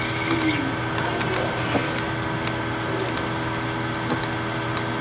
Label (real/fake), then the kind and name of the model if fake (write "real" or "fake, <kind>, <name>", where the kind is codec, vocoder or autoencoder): real